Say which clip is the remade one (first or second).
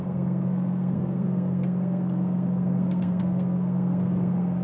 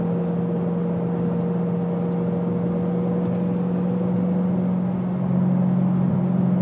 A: first